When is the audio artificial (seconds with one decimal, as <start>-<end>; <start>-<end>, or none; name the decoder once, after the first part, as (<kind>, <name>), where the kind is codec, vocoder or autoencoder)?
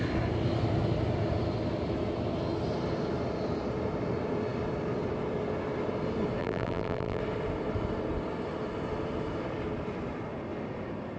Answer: 6.4-7.2 (vocoder, BigVGAN v2)